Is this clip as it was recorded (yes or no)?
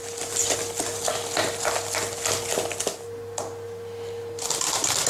yes